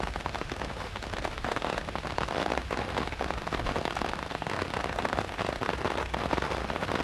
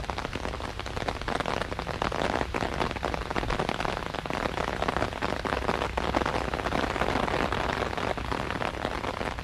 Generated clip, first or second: first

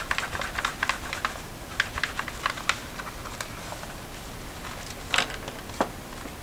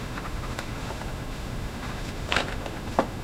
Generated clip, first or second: second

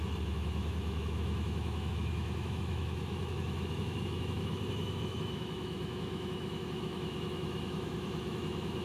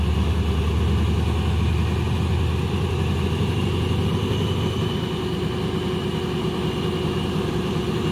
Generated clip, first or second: first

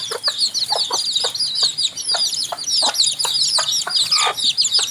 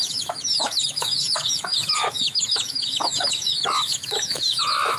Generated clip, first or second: second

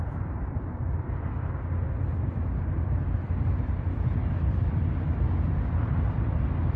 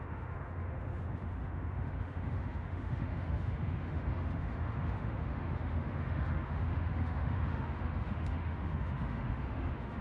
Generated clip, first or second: second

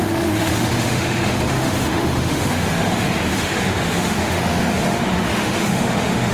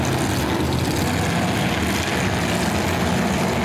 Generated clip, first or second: first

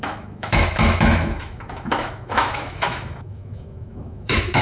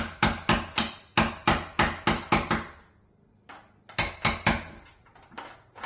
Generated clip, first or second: first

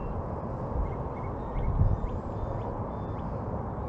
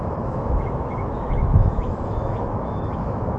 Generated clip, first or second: second